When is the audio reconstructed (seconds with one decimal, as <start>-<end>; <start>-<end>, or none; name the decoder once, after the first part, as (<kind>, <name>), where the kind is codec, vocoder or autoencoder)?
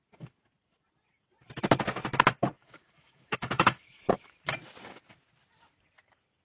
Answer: 2.6-4.5 (autoencoder, DAC-VAE)